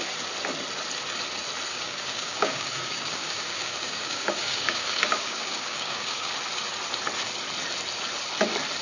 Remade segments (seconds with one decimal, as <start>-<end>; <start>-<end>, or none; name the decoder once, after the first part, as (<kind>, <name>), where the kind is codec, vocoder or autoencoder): 1.7-6.3 (codec, DAC)